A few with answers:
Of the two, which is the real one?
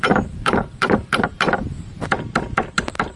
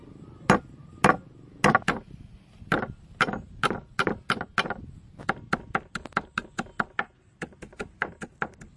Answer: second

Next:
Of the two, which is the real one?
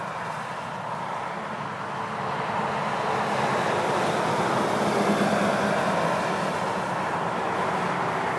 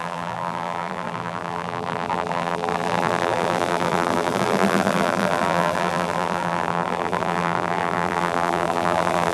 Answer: first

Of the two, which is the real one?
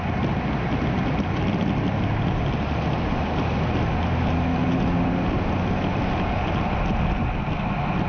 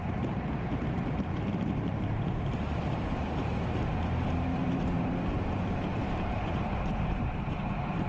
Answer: first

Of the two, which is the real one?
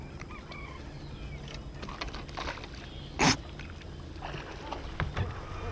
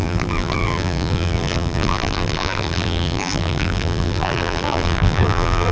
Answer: first